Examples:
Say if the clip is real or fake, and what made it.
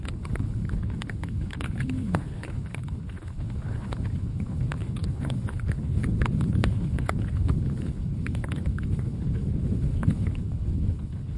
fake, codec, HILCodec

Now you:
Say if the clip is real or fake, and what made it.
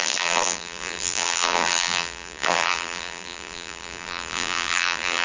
fake, vocoder, BigVGAN v2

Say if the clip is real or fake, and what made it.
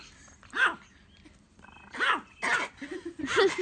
real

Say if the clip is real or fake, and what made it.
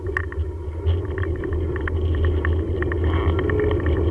real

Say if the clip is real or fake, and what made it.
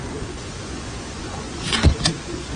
fake, vocoder, Vocos